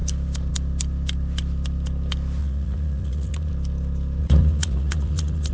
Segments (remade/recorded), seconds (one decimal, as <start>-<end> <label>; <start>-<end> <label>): 0.0-2.4 recorded; 2.4-3.5 remade; 3.5-4.2 recorded; 4.2-5.5 remade